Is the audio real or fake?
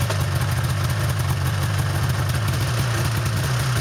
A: real